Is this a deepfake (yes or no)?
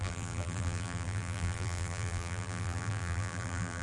yes